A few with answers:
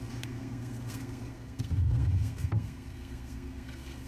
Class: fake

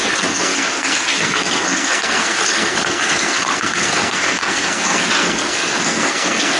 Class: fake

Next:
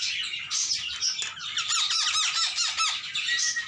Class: real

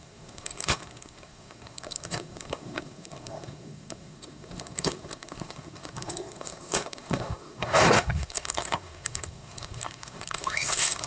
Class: fake